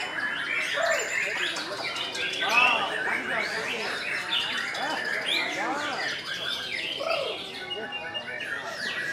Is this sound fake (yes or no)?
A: no